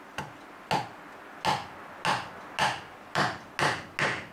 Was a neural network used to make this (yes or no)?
no